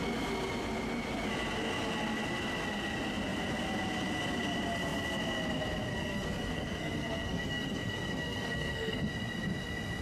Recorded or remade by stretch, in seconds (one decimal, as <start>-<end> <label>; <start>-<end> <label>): 0.0-5.9 recorded; 5.9-9.1 remade; 9.1-10.0 recorded